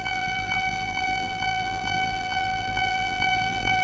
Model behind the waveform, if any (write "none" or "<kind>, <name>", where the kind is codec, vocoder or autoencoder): vocoder, BigVGAN v2